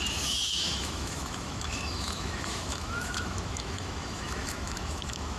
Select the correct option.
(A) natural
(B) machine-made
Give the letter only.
B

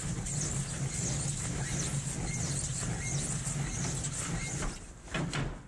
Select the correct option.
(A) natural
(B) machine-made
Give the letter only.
A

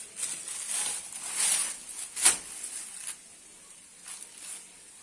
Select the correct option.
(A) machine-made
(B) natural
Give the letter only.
B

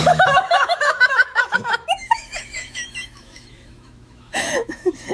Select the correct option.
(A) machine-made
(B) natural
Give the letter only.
A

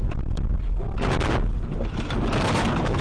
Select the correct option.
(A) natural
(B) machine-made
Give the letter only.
A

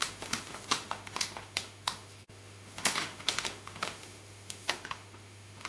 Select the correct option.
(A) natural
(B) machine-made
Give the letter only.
B